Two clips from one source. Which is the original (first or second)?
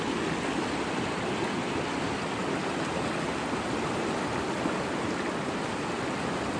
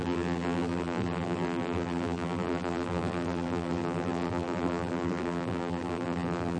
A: first